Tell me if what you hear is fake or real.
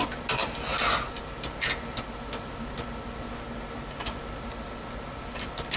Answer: real